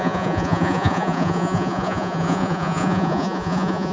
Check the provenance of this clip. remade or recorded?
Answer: remade